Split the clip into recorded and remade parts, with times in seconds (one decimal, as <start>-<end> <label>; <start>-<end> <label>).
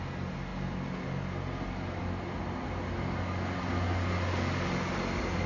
0.0-5.5 recorded